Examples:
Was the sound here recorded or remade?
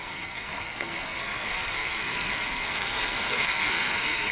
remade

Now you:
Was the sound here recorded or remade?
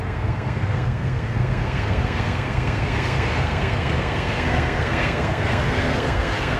remade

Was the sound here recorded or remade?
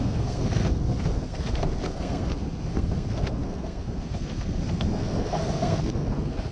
remade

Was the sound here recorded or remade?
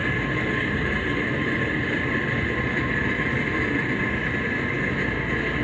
recorded